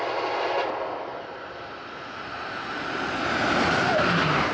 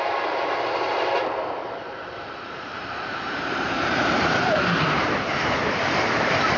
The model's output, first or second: second